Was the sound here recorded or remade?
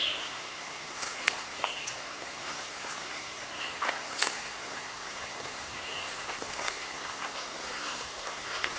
remade